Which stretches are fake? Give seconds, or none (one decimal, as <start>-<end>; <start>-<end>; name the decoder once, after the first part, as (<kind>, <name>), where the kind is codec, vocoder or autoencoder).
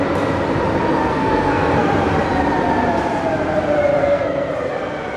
1.0-1.9 (codec, SNAC); 4.0-4.5